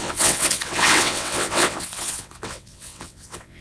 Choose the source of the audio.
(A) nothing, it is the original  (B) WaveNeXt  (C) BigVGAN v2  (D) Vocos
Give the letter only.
B